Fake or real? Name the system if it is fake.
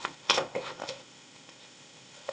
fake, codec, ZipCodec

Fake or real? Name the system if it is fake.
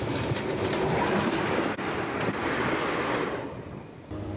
real